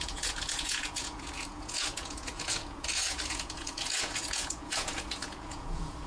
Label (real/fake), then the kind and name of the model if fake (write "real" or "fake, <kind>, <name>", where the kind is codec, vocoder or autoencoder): fake, vocoder, Vocos